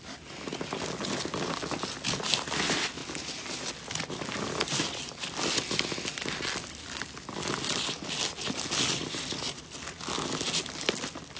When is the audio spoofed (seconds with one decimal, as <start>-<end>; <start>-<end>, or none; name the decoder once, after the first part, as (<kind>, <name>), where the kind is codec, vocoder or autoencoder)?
none